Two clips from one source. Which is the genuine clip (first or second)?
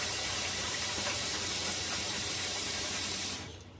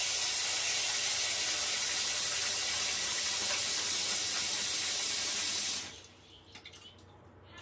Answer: second